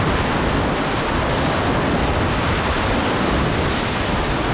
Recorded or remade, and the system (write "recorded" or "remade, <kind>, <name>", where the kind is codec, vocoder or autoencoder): recorded